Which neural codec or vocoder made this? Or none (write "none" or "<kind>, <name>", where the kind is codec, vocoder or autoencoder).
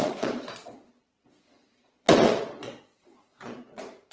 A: vocoder, Vocos